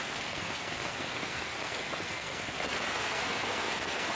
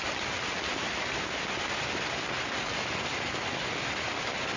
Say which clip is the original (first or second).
second